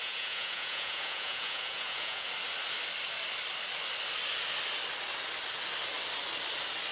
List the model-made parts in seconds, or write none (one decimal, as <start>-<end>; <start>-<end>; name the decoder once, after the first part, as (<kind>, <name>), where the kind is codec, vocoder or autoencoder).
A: 0.0-2.3 (vocoder, Vocos)